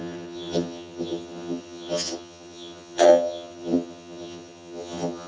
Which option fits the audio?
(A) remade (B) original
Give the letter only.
A